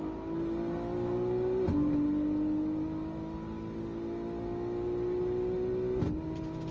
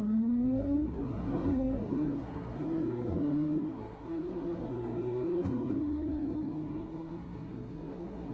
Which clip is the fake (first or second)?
second